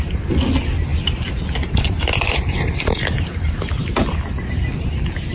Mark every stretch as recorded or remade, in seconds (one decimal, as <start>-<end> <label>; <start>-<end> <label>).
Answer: 0.0-5.3 recorded